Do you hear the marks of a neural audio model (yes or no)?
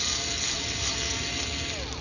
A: no